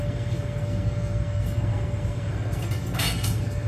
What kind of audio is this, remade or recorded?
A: remade